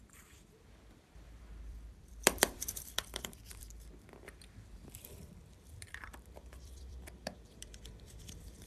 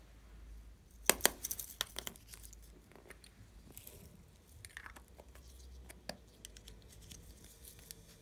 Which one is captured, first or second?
second